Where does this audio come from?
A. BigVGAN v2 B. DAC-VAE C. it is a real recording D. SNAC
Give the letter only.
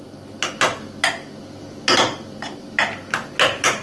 C